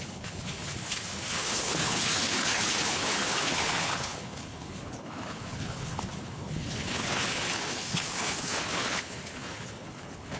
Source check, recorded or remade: remade